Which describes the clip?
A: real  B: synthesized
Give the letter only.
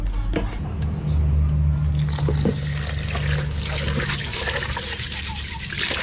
A